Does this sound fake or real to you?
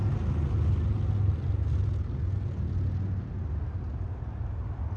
real